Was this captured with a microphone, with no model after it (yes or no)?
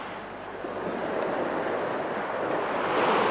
yes